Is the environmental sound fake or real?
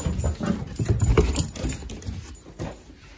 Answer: real